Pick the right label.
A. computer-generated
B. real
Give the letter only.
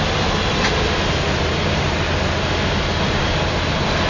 B